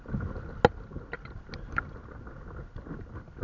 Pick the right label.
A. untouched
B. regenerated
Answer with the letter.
A